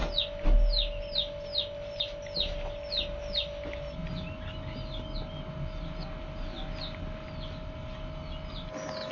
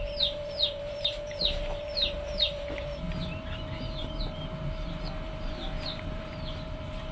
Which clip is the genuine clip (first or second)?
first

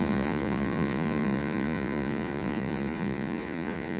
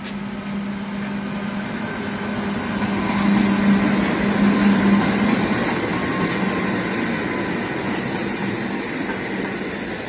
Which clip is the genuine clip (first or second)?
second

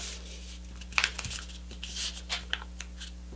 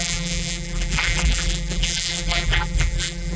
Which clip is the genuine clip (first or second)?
first